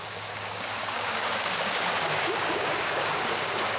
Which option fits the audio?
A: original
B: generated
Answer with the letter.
B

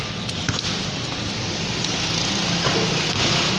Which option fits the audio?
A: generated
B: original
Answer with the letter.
B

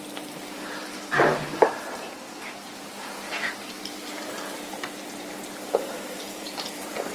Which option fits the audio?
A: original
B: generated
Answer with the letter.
B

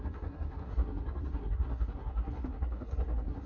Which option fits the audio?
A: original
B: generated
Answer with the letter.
B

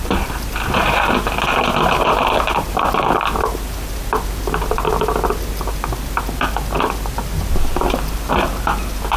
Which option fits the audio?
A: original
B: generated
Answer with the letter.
A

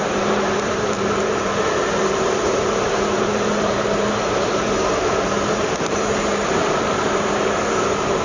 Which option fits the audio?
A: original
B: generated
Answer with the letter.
B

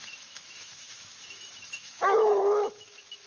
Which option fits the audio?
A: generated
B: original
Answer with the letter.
A